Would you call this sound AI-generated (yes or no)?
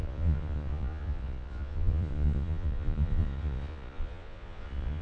yes